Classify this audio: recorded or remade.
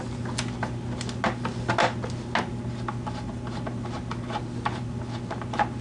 recorded